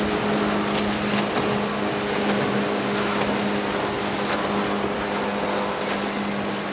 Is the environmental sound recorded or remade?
recorded